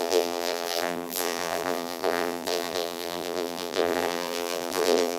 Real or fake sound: fake